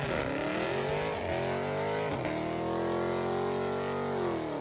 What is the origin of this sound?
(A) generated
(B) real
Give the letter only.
B